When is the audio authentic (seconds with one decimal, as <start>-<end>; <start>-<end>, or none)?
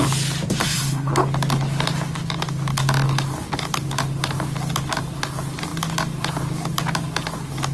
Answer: 0.0-0.6; 1.1-7.7